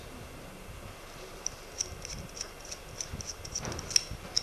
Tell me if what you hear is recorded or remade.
recorded